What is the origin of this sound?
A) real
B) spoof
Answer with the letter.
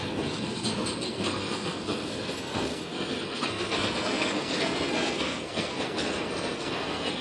B